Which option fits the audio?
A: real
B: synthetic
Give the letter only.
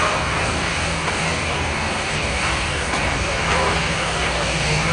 B